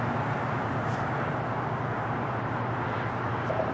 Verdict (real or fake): real